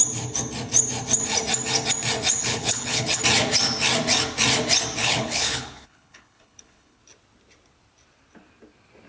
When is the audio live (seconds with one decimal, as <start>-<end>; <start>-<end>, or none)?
0.0-2.4; 3.2-5.0; 7.0-9.1